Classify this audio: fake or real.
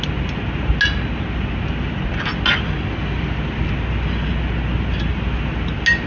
real